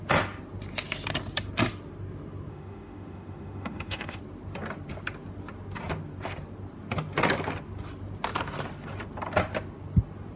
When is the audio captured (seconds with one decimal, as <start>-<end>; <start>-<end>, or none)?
0.0-2.5; 4.2-10.4